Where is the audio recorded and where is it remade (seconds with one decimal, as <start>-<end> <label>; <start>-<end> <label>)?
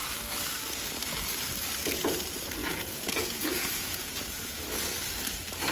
0.0-2.6 recorded; 2.6-4.6 remade; 4.6-5.7 recorded